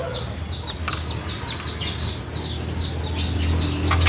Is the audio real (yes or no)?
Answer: yes